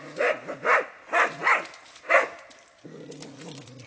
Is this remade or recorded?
recorded